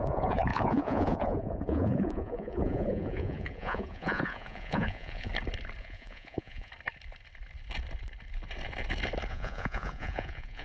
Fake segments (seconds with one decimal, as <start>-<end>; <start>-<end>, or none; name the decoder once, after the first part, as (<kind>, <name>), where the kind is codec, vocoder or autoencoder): 0.0-5.3 (vocoder, Vocos); 5.8-6.7; 9.3-10.6